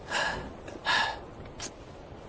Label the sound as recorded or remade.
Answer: recorded